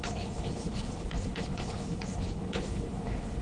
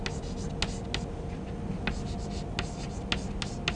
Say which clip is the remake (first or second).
first